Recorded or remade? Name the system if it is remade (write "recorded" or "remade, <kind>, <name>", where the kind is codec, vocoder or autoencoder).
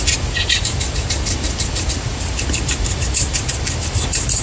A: recorded